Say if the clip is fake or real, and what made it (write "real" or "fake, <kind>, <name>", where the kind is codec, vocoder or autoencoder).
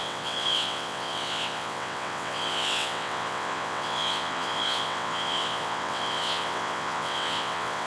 fake, vocoder, WaveNeXt